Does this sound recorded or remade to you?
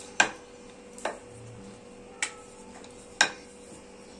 recorded